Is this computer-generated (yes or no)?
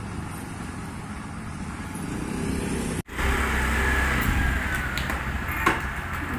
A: no